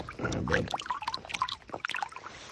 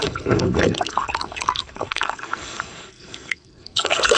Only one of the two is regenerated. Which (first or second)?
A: second